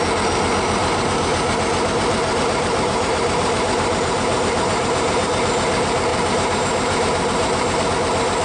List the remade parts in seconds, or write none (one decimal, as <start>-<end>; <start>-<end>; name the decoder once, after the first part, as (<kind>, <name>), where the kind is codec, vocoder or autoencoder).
0.8-5.3 (vocoder, BigVGAN v2); 6.1-7.9